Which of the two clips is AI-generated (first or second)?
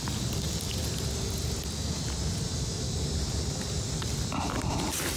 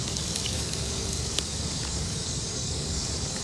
second